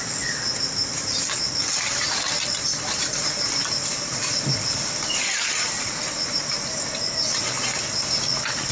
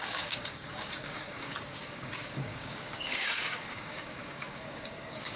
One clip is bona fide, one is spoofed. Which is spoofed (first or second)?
second